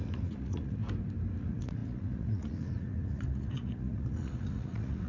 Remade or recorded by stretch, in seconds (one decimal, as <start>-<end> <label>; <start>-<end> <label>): 0.0-0.8 remade; 0.8-1.4 recorded; 1.4-5.1 remade